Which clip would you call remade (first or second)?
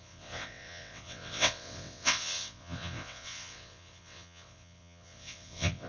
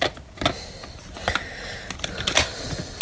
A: first